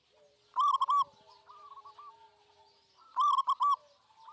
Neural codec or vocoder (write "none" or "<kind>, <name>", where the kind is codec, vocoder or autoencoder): none